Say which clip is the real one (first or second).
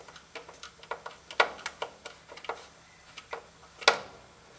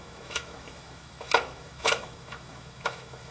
first